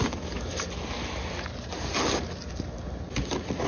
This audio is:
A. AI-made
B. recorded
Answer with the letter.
B